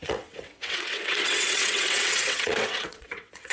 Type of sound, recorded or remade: remade